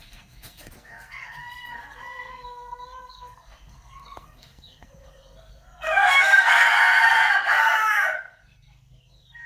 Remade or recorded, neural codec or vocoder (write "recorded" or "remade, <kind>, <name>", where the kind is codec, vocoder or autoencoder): remade, codec, SNAC